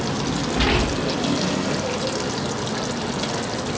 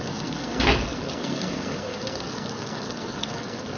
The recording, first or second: first